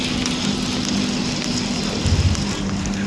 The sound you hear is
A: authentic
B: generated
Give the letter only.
A